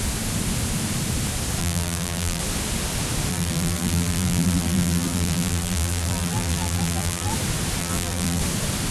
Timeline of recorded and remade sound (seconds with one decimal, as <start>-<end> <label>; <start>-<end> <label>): 0.0-1.6 recorded; 1.6-2.4 remade; 2.4-3.3 recorded; 3.3-7.3 remade; 7.3-7.8 recorded; 7.8-8.4 remade; 8.4-8.9 recorded